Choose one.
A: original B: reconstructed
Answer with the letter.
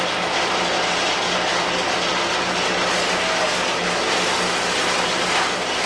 A